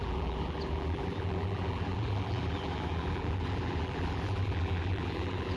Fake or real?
fake